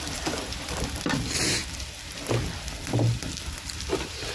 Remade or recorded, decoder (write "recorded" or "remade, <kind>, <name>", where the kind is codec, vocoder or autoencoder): remade, vocoder, BigVGAN v2